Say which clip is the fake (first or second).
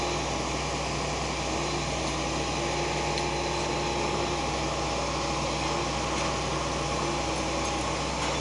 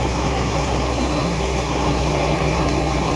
second